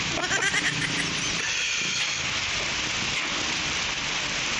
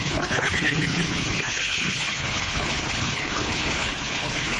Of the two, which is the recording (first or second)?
first